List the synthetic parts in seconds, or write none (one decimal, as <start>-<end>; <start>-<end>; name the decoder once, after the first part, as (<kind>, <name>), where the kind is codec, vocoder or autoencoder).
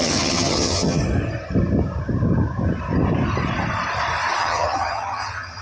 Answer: 0.0-1.0 (vocoder, HiFi-GAN); 4.4-5.6